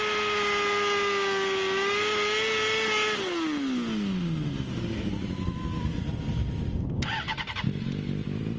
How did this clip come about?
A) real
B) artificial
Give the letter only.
A